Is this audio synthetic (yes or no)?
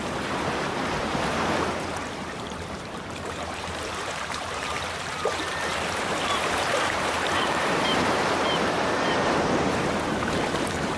yes